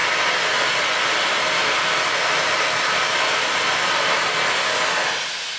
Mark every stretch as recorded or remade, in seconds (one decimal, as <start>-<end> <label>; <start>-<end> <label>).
0.0-5.6 recorded